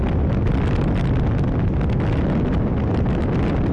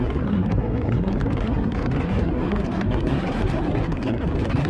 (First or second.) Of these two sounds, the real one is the first